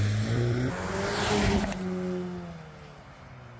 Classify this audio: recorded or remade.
recorded